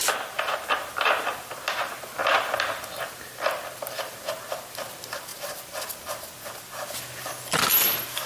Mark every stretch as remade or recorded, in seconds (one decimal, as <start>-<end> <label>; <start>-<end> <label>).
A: 0.0-5.3 recorded; 5.3-6.5 remade; 6.5-8.3 recorded